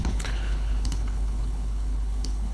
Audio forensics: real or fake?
fake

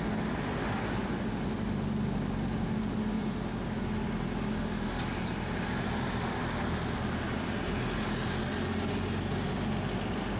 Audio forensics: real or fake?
real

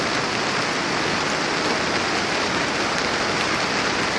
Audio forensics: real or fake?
real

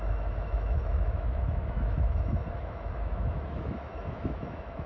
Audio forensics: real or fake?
fake